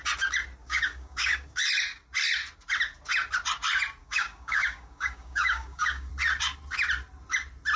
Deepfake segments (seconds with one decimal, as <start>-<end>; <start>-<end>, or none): 0.6-1.6; 4.0-6.1